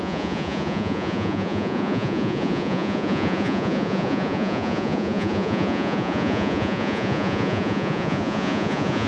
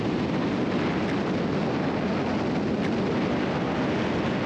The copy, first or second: first